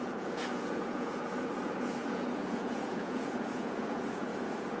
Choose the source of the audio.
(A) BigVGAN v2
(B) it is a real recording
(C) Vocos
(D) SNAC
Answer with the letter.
C